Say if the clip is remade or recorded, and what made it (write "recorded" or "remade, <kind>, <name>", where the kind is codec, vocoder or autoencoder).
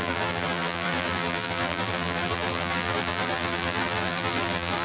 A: remade, vocoder, BigVGAN v2